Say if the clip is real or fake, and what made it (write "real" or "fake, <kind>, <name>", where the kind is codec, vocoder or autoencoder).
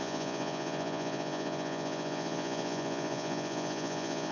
fake, vocoder, Vocos